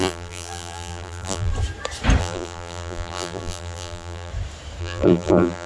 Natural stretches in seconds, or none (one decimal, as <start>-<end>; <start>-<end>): 1.5-2.2; 4.3-4.8